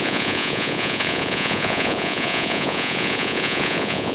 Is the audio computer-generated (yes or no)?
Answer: yes